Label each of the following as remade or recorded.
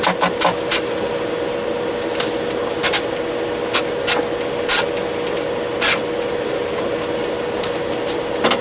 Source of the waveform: recorded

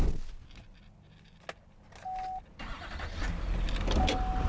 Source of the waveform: recorded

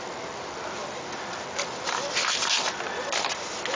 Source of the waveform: recorded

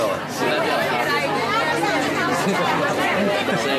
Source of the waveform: recorded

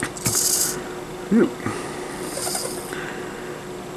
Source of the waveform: recorded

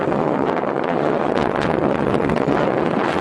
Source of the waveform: remade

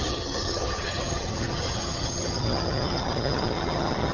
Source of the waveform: remade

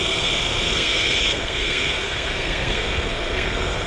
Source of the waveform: remade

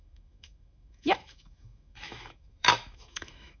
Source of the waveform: remade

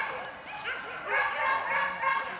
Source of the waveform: recorded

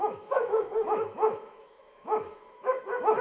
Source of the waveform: remade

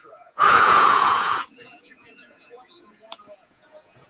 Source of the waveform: remade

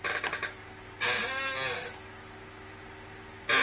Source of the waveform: recorded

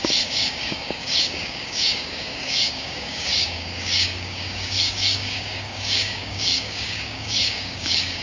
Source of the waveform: remade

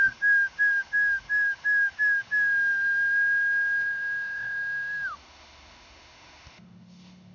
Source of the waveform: remade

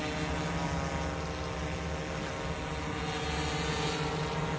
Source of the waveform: recorded